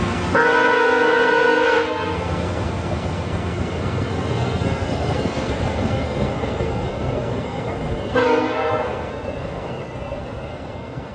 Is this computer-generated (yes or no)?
yes